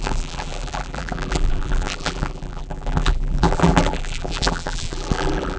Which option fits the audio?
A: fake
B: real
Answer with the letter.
A